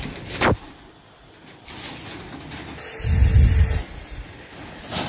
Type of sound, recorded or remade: recorded